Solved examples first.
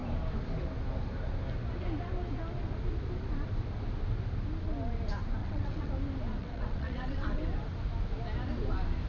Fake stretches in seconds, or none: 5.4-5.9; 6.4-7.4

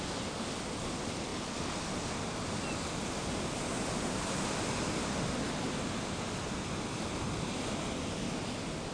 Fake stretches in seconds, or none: none

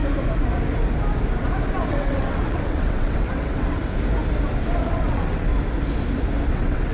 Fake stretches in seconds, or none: 1.9-3.8; 4.9-5.5; 6.5-6.9

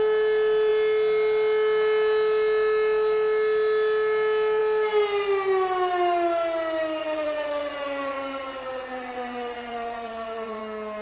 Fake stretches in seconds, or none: 7.0-10.6

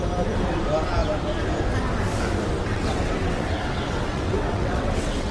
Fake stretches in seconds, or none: 2.7-5.3

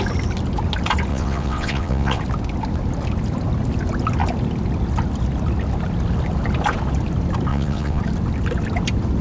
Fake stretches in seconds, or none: 1.1-2.2; 7.5-8.0

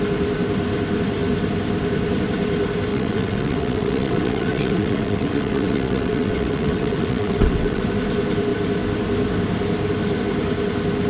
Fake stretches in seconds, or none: 2.9-7.8